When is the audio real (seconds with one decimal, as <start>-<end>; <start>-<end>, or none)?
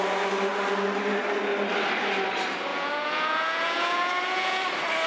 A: 0.0-2.7; 4.6-5.1